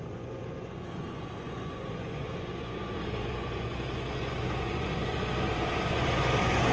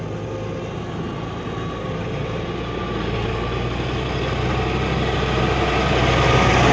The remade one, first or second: first